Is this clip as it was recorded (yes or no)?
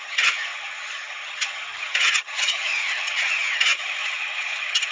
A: no